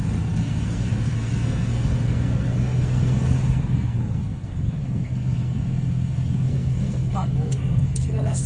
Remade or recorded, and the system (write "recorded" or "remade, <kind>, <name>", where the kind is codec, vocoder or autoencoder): remade, codec, SNAC